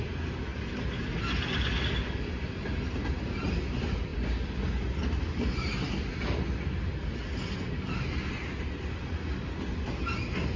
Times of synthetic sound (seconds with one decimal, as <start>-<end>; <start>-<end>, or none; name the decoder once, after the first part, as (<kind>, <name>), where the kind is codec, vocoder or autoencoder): none